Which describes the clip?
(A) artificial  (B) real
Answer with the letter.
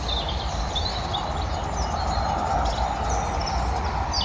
B